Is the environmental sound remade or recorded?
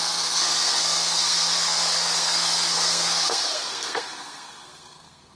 remade